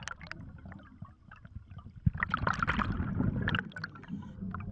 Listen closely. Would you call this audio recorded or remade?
recorded